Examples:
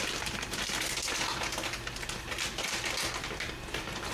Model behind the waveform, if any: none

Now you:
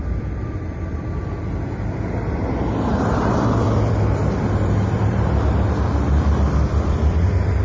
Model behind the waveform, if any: vocoder, BigVGAN v2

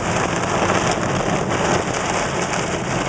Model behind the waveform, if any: none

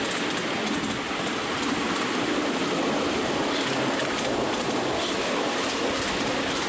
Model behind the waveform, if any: none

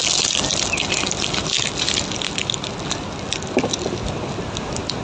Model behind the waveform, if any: none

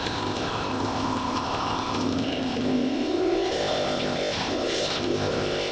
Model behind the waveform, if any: codec, ZipCodec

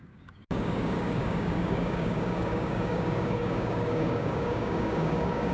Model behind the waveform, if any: codec, DAC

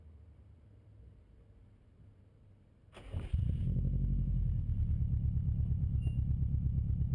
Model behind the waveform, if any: vocoder, BigVGAN v2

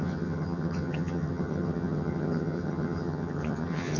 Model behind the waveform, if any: vocoder, HiFi-GAN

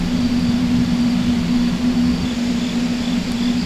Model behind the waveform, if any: none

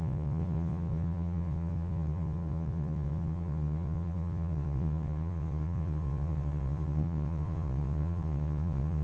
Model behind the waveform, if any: vocoder, Vocos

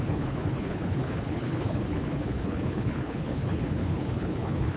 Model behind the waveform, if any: codec, HILCodec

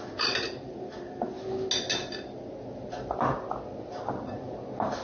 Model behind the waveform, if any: none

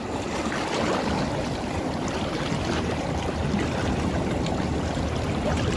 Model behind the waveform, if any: none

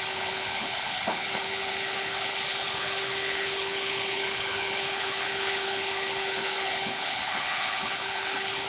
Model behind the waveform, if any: codec, HILCodec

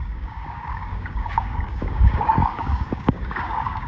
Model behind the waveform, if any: codec, DAC